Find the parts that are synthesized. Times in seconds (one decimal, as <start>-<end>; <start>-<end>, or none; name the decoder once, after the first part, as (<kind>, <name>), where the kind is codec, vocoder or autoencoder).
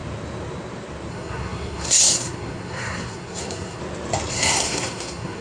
1.1-3.8 (codec, SNAC); 4.3-5.4